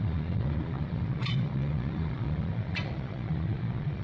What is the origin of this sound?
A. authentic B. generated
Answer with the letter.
B